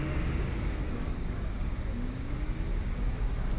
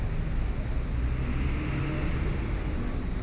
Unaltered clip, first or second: second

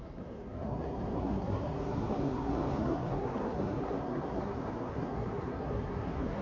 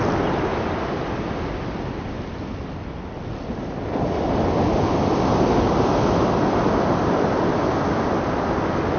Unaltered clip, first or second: second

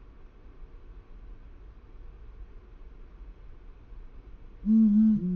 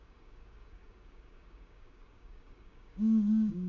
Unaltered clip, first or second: first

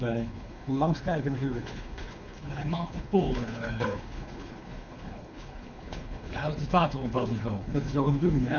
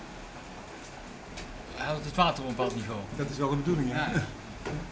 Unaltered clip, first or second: second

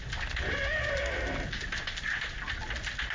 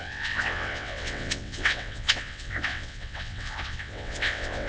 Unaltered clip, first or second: first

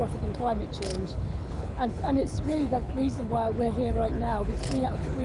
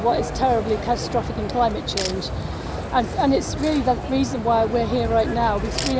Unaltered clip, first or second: second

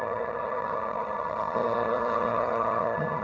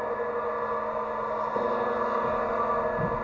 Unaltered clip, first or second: second